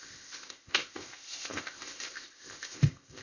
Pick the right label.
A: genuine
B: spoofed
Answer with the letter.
B